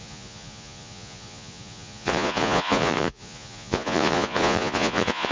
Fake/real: fake